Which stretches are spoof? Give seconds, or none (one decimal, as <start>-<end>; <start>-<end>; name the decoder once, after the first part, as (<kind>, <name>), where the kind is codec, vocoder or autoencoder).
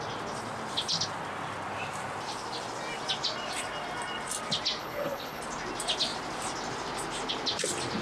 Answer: 4.8-5.4 (codec, HILCodec)